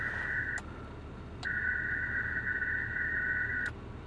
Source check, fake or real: real